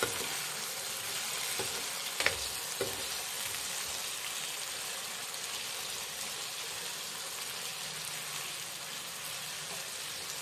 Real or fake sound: real